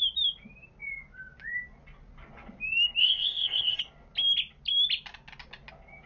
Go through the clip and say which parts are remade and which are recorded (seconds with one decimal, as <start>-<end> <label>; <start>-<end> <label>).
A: 0.0-3.0 recorded; 3.0-3.8 remade; 3.8-6.1 recorded